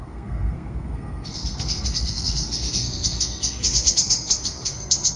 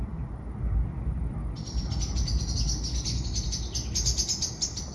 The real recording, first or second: second